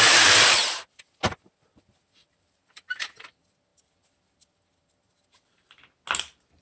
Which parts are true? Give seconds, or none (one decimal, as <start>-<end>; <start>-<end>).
0.0-2.2; 3.0-6.6